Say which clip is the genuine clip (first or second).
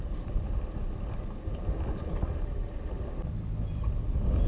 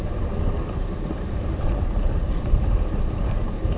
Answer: first